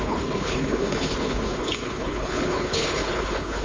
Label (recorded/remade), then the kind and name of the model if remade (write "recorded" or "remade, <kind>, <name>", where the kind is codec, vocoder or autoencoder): remade, codec, HILCodec